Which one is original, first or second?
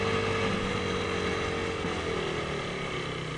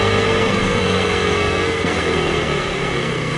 first